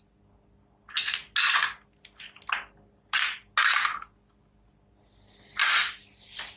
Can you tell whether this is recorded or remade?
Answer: recorded